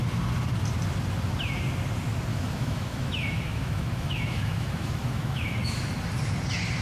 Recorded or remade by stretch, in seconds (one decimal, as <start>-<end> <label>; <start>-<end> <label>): 0.0-2.3 recorded; 2.3-5.9 remade; 5.9-6.8 recorded